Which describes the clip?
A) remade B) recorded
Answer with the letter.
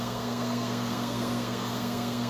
A